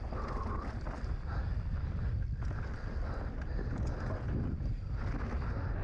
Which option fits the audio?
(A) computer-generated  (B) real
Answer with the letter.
B